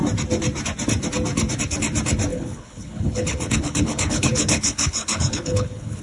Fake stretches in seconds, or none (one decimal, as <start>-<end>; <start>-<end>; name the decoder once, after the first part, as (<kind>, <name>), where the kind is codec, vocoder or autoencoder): 2.3-6.0 (codec, HILCodec)